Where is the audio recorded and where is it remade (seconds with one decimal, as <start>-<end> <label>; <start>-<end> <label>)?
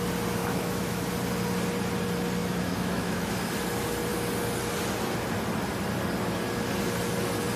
0.0-0.4 recorded; 0.4-1.1 remade; 1.1-2.4 recorded; 2.4-3.3 remade; 3.3-7.6 recorded